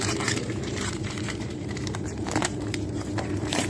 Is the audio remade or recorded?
remade